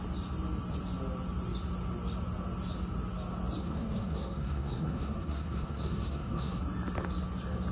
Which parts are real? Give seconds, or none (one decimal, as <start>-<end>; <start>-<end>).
0.0-3.6; 6.6-7.7